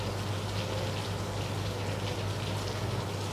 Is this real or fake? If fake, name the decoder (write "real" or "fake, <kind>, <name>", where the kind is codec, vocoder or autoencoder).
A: real